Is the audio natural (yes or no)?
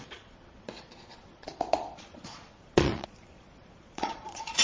no